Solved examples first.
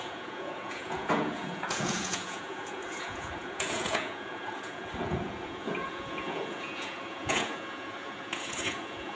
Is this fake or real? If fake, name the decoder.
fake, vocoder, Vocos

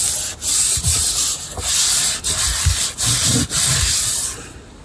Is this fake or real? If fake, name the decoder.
real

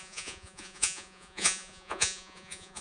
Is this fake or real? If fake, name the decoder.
fake, vocoder, Vocos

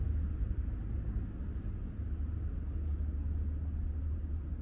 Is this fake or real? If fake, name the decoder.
real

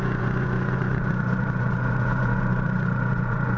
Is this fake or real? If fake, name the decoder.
fake, vocoder, Vocos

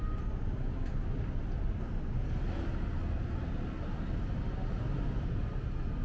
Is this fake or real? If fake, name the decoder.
real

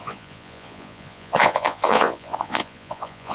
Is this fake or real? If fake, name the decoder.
fake, vocoder, Vocos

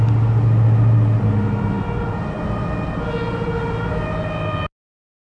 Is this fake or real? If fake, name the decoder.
real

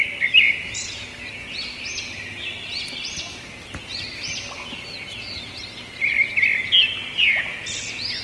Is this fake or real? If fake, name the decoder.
real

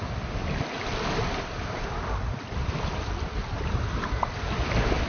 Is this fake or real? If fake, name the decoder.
real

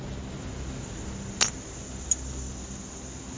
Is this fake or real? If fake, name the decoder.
real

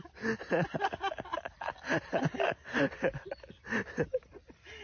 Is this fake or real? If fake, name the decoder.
real